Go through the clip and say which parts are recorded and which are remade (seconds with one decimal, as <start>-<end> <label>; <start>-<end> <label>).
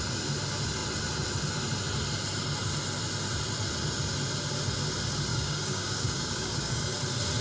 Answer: 0.0-5.3 recorded; 5.3-6.9 remade; 6.9-7.4 recorded